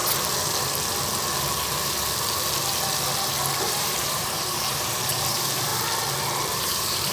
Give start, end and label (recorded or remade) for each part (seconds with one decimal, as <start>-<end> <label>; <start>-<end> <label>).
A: 0.0-3.6 recorded; 3.6-5.7 remade; 5.7-6.6 recorded; 6.6-7.1 remade